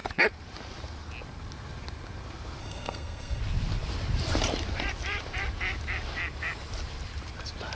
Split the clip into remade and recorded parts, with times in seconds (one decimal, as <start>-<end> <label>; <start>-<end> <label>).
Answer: 0.0-2.6 recorded; 2.6-3.4 remade; 3.4-7.7 recorded